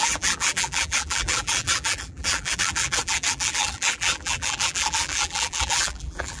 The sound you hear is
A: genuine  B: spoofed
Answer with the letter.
B